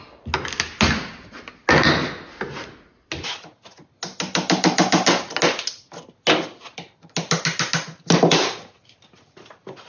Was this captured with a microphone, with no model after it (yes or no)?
yes